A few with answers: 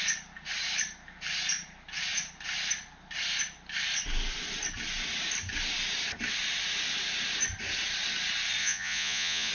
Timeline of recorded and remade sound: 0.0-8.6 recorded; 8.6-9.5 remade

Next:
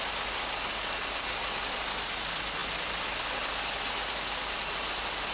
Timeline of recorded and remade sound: 0.0-5.3 recorded

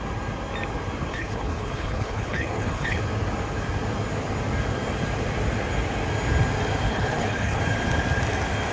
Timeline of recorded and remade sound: 0.0-1.1 recorded; 1.1-3.0 remade; 3.0-6.9 recorded; 6.9-7.6 remade; 7.6-8.7 recorded

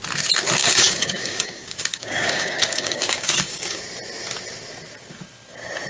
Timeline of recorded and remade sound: 0.0-0.6 recorded; 0.6-3.8 remade; 3.8-5.9 recorded

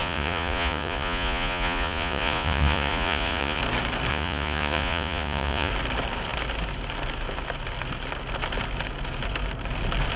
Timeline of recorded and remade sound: 0.0-3.6 remade; 3.6-4.1 recorded; 4.1-5.7 remade; 5.7-10.2 recorded